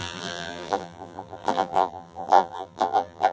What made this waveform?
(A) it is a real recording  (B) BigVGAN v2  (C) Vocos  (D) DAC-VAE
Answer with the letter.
B